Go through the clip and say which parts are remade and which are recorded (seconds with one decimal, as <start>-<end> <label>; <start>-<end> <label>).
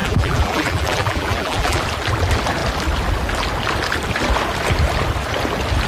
0.0-1.8 remade; 1.8-5.9 recorded